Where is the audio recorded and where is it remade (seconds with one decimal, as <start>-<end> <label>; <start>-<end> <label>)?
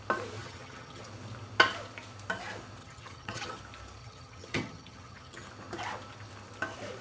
0.0-0.4 recorded; 0.4-1.0 remade; 1.0-2.8 recorded; 2.8-3.6 remade; 3.6-4.0 recorded; 4.0-5.5 remade; 5.5-7.0 recorded